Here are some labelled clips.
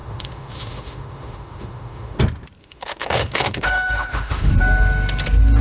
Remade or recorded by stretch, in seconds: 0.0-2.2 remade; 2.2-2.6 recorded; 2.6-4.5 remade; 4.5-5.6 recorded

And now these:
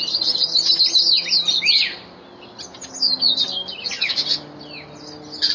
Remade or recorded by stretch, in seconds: 0.0-5.5 recorded

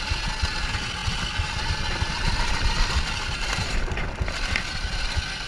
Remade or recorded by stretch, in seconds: 0.0-5.5 recorded

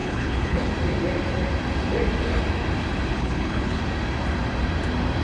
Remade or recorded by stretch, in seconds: 0.0-0.7 remade; 0.7-3.1 recorded; 3.1-3.8 remade; 3.8-5.2 recorded

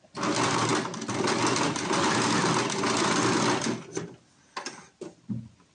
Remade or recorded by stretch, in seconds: 0.0-5.7 recorded

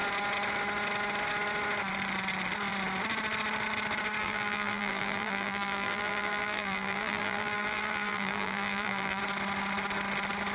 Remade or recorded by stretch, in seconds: 0.0-4.2 recorded; 4.2-9.2 remade; 9.2-10.5 recorded